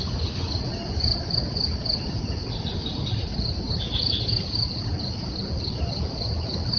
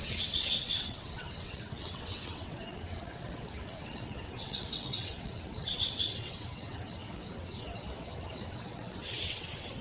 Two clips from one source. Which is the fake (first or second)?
second